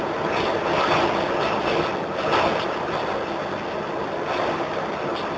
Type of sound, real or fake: real